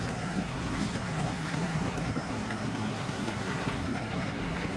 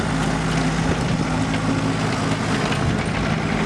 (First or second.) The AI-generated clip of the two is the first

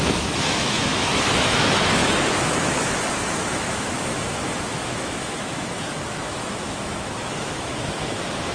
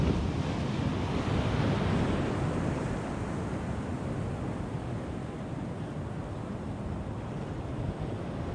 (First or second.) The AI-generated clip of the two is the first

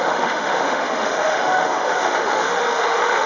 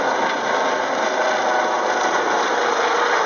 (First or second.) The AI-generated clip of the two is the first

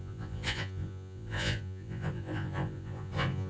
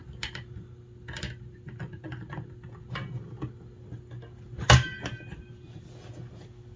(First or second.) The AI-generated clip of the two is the first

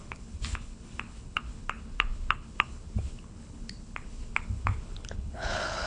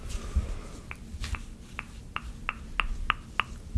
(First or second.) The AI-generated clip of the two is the first